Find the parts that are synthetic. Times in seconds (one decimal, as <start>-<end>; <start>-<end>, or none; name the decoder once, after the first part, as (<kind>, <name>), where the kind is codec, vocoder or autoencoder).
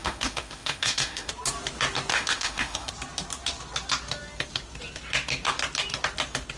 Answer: 0.0-1.3 (autoencoder, DAC-VAE); 2.1-2.9